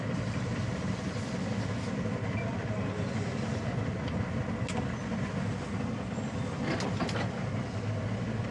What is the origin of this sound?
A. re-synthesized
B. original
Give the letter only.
B